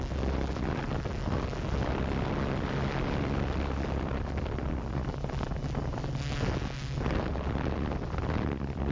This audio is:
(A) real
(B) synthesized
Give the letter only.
A